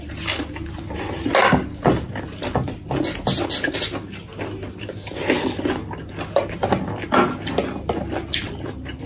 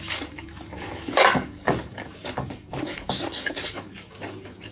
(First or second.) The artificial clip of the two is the second